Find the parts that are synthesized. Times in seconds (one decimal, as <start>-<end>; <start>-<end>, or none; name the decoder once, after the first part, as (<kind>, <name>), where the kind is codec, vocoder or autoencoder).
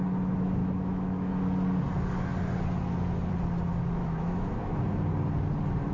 0.6-1.3 (autoencoder, DAC-VAE); 4.0-5.1